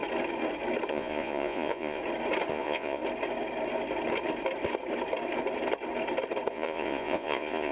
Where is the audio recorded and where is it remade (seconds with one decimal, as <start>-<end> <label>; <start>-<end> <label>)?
0.0-0.9 recorded; 0.9-2.0 remade; 2.0-2.5 recorded; 2.5-3.0 remade; 3.0-6.5 recorded; 6.5-7.7 remade